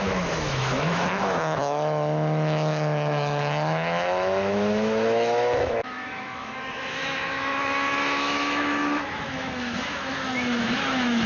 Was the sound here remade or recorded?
remade